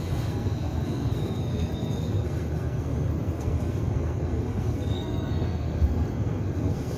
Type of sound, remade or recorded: remade